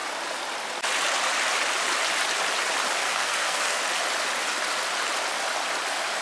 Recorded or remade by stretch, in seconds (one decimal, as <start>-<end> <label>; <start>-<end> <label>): 0.0-3.0 recorded; 3.0-3.8 remade; 3.8-6.2 recorded